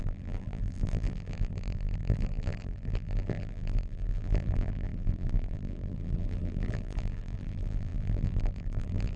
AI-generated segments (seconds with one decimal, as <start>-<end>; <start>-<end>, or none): 0.0-9.2